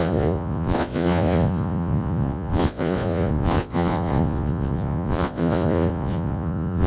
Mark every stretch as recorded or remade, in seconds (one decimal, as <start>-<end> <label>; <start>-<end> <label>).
0.0-6.9 remade

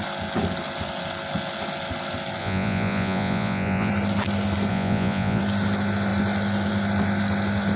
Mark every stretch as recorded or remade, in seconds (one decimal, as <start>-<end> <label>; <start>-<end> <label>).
0.0-2.4 recorded; 2.4-3.9 remade; 3.9-4.7 recorded; 4.7-5.4 remade; 5.4-7.8 recorded

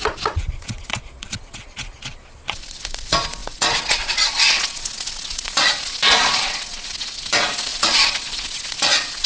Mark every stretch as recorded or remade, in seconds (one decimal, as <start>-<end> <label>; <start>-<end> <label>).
0.0-9.3 remade

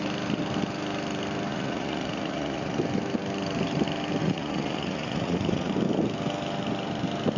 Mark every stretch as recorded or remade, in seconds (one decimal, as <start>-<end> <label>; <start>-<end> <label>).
0.0-1.5 recorded; 1.5-2.8 remade; 2.8-4.2 recorded; 4.2-5.7 remade; 5.7-7.4 recorded